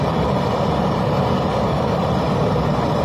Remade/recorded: remade